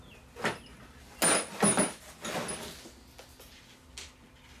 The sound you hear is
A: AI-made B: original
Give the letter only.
B